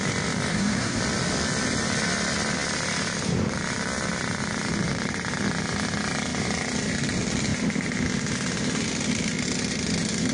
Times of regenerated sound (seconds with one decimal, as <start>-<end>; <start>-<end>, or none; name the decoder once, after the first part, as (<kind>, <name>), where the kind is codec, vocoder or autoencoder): 0.5-1.0 (codec, SNAC)

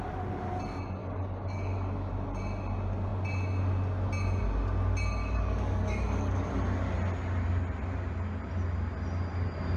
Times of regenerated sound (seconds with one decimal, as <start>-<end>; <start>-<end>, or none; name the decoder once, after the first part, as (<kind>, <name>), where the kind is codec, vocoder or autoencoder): 1.0-2.1 (codec, DAC); 5.2-6.5

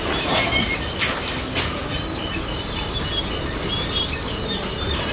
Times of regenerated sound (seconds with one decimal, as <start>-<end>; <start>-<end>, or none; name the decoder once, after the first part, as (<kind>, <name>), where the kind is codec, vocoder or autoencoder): 1.8-5.1 (vocoder, BigVGAN v2)

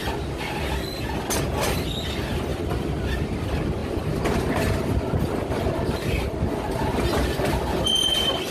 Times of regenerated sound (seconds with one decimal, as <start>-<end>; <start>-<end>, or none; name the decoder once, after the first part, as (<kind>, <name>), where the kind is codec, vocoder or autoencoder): none